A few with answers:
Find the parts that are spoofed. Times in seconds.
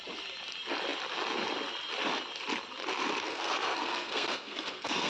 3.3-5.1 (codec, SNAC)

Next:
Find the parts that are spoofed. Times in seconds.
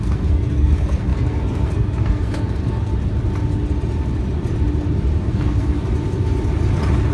0.0-2.9 (codec, SNAC); 5.2-5.8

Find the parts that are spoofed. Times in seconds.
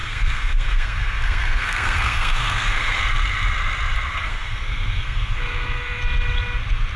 0.0-3.0 (codec, SNAC); 4.1-6.0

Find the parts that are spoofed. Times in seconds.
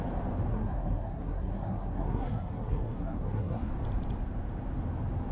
0.5-3.7 (codec, SNAC)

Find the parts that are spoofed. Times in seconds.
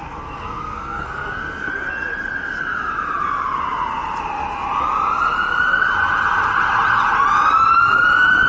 0.0-1.7 (codec, SNAC)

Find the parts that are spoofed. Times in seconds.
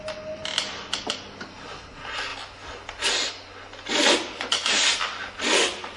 none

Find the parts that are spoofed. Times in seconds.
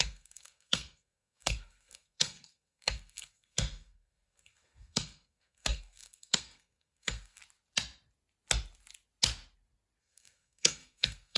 0.0-7.4 (codec, SNAC); 10.0-11.4